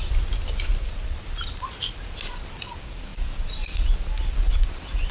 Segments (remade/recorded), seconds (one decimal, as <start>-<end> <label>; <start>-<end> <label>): 0.0-5.1 recorded